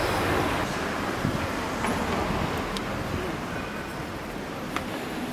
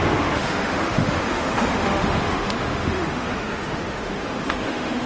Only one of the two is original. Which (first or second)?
first